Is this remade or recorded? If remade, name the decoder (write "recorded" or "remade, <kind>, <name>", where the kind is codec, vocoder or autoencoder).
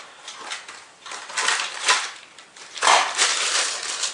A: remade, vocoder, BigVGAN v2